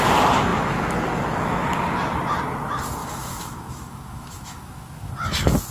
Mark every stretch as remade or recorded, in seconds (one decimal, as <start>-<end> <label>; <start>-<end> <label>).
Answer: 0.0-3.0 recorded; 3.0-5.1 remade; 5.1-5.7 recorded